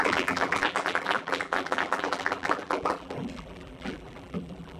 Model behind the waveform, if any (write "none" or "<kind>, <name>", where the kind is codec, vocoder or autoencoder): vocoder, BigVGAN v2